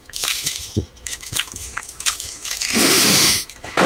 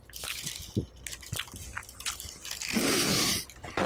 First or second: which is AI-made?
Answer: first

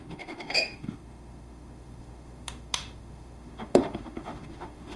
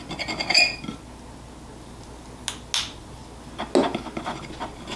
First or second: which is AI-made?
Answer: first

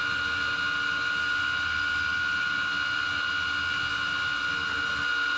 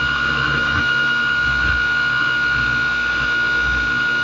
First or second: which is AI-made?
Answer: second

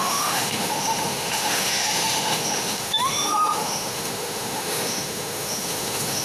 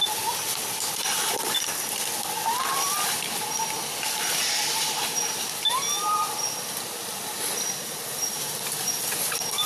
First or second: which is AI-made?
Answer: first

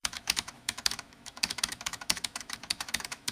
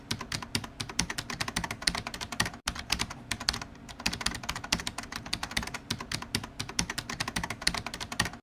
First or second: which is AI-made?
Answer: first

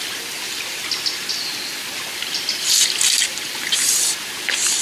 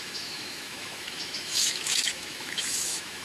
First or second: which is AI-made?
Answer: second